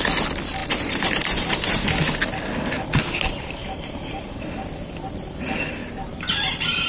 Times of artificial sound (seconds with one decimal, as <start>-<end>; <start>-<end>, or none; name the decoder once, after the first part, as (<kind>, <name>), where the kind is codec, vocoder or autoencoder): 0.6-2.0 (vocoder, BigVGAN v2); 3.6-4.5; 5.8-6.5